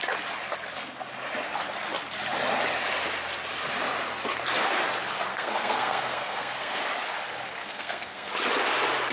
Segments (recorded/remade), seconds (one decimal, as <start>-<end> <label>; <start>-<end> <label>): 0.0-5.3 recorded; 5.3-6.8 remade; 6.8-7.6 recorded; 7.6-8.3 remade; 8.3-9.1 recorded